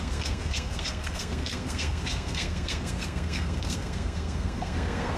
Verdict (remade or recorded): remade